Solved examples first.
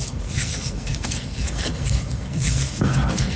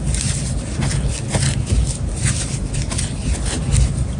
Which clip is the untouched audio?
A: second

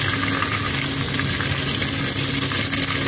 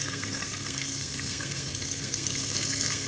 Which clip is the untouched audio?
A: first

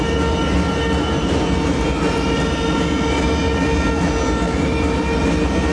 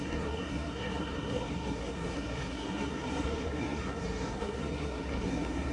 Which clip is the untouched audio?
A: first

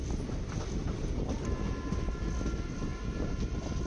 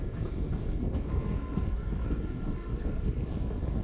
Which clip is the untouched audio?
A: first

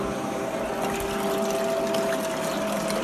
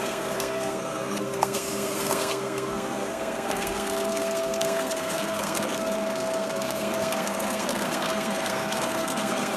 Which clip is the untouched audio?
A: first